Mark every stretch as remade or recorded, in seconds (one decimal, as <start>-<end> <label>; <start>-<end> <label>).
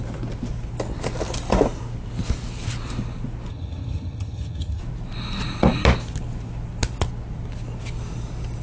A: 0.0-3.5 recorded; 3.5-4.8 remade; 4.8-8.6 recorded